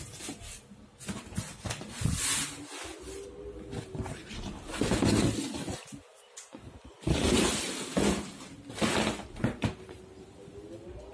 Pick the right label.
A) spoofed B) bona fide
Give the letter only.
B